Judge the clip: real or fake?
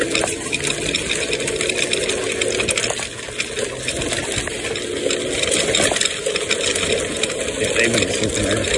real